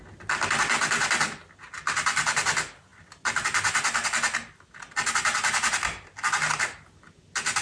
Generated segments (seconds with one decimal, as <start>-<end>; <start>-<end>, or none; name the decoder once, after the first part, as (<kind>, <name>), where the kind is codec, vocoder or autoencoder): none